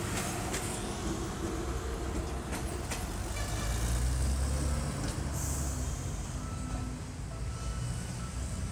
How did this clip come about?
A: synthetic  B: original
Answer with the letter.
B